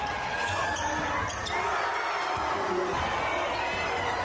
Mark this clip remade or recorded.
recorded